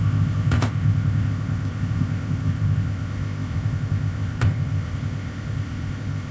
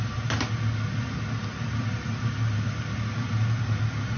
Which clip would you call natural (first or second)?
second